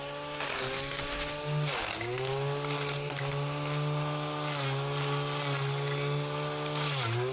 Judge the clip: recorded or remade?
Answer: recorded